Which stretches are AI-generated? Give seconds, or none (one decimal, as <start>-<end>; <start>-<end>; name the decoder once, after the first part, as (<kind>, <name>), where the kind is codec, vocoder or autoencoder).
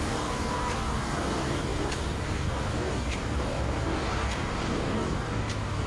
0.0-5.9 (codec, DAC)